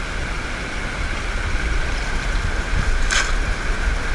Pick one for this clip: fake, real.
real